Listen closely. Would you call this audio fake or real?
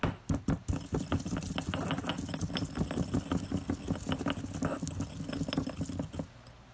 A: real